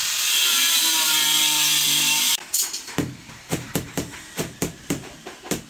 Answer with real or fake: fake